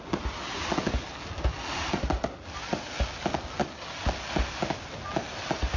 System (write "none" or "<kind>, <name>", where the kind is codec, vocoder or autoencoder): none